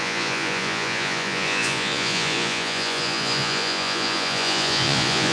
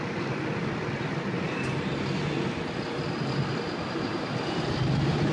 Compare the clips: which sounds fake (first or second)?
first